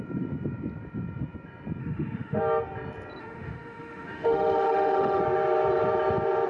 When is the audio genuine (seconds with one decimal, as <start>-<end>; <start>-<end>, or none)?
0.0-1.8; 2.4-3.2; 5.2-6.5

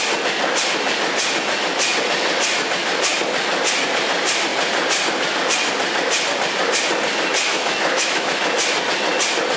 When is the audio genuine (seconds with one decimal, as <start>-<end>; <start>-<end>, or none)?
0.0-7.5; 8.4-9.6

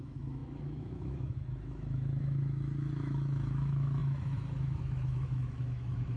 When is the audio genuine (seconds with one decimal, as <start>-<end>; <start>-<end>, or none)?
none